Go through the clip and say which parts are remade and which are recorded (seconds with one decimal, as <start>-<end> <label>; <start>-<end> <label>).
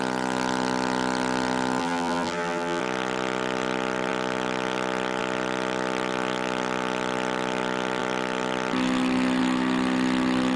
0.0-1.8 recorded; 1.8-2.8 remade; 2.8-10.6 recorded